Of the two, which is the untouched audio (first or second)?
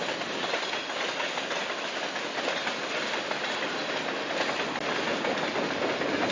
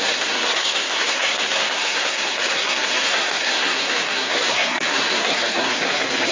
first